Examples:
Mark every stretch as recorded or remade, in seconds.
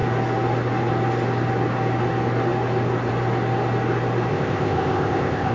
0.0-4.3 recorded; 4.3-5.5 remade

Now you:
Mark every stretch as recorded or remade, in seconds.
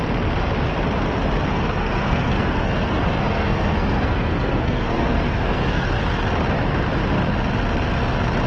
0.0-1.5 recorded; 1.5-5.9 remade; 5.9-8.5 recorded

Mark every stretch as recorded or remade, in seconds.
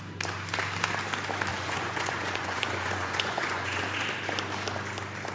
0.0-1.5 recorded; 1.5-3.8 remade; 3.8-5.3 recorded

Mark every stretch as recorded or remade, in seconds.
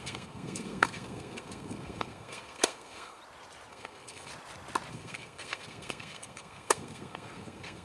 0.0-3.2 remade; 3.2-3.7 recorded; 3.7-4.3 remade; 4.3-4.9 recorded; 4.9-7.8 remade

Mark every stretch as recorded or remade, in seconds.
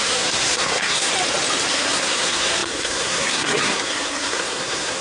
0.0-1.1 remade; 1.1-1.7 recorded; 1.7-5.0 remade